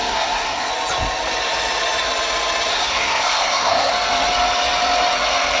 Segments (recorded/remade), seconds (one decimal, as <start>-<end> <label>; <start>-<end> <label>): 0.0-0.7 remade; 0.7-2.7 recorded; 2.7-3.9 remade; 3.9-5.6 recorded